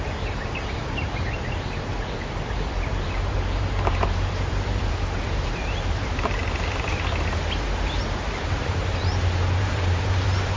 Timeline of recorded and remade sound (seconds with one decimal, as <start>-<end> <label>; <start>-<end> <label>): 0.0-6.4 remade; 6.4-8.0 recorded; 8.0-10.6 remade